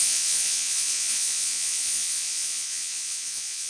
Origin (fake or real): fake